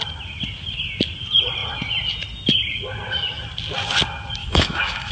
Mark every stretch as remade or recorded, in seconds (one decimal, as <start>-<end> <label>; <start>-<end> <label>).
0.0-4.4 recorded; 4.4-5.1 remade